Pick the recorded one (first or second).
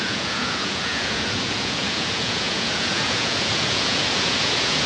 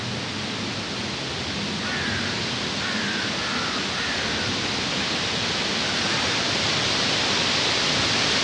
second